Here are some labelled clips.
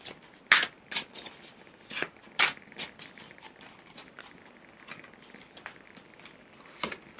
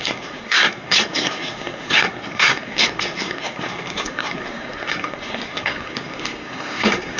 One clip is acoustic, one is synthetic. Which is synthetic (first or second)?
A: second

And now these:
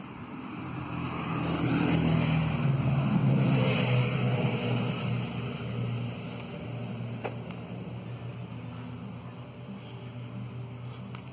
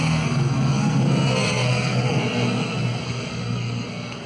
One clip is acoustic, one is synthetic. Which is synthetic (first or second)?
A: second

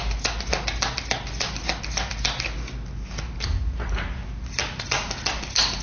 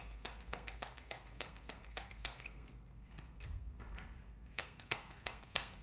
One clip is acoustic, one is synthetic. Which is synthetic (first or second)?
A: second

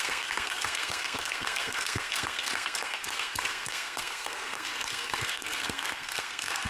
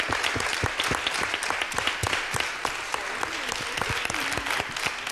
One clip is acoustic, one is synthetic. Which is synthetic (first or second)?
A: first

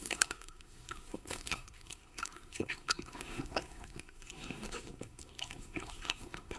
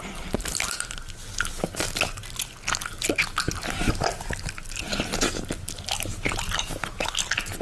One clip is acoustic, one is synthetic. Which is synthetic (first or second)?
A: first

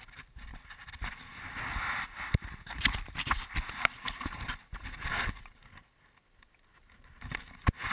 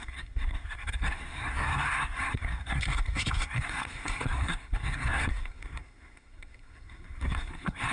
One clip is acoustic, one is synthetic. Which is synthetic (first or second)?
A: second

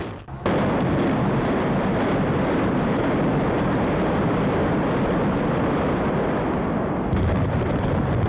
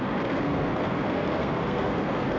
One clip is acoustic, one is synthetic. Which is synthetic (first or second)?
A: second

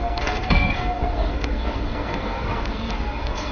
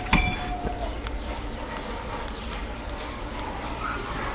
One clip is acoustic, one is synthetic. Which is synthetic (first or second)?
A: first